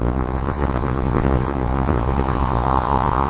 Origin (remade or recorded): remade